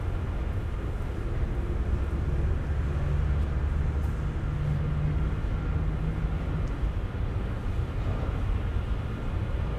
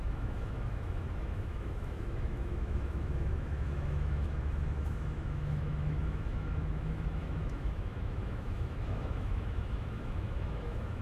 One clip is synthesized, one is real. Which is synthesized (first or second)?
second